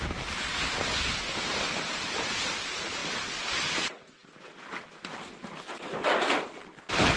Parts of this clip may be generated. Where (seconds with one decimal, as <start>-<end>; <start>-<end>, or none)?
none